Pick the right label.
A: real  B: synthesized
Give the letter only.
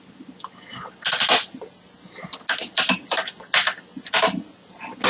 A